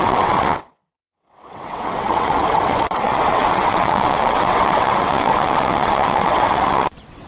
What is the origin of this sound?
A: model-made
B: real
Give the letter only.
A